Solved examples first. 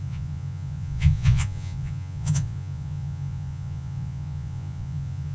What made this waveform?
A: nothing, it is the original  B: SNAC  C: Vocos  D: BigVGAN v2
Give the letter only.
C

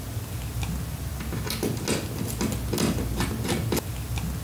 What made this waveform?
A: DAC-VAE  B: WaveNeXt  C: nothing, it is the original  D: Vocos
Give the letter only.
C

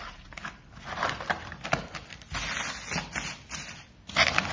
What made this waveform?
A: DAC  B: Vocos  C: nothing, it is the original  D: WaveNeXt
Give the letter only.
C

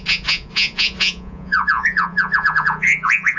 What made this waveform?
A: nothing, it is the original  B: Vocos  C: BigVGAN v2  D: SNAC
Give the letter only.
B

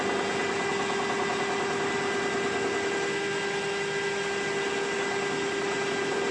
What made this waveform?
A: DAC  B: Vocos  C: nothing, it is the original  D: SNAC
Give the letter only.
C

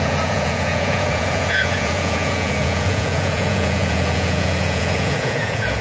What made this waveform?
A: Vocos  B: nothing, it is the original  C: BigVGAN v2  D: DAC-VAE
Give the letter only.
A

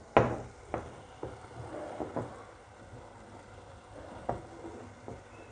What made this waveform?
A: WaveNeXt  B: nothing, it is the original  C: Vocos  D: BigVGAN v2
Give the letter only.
B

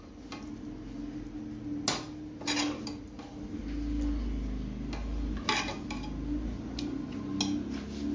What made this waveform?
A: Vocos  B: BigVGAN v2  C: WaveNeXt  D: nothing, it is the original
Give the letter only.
D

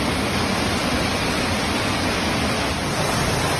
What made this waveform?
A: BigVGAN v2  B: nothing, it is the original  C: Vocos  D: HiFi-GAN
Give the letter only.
B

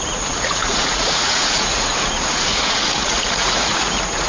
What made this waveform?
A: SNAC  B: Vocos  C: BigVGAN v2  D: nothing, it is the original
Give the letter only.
B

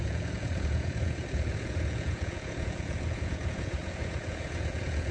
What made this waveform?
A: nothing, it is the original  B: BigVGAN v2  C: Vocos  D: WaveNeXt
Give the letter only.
C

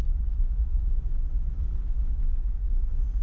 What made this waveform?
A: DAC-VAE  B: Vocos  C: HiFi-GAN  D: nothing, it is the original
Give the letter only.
D